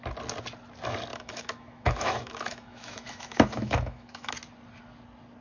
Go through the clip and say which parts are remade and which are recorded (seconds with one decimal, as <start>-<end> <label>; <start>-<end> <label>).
0.0-1.1 recorded; 1.1-4.3 remade; 4.3-5.4 recorded